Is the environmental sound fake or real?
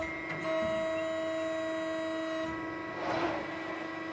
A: real